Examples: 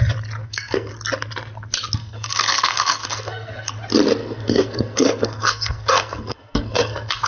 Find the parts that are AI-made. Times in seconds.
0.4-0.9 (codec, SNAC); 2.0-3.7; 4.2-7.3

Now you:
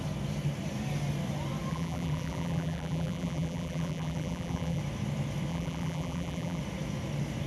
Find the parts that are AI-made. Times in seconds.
1.7-4.8 (vocoder, BigVGAN v2); 5.5-6.6